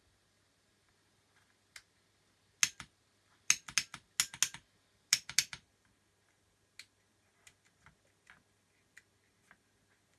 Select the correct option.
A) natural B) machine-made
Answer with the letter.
A